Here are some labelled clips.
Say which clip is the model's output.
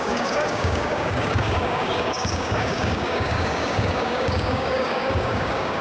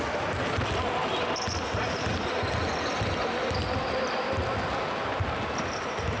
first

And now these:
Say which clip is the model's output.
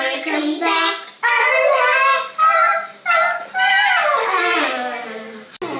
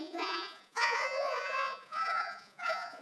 second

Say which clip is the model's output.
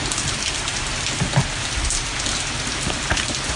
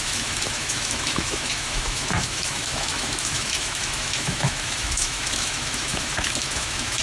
second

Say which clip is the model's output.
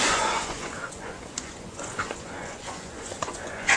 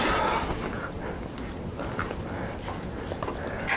first